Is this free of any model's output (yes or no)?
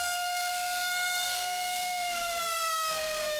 no